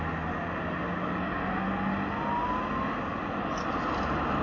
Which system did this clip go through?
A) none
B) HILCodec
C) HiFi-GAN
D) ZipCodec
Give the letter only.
A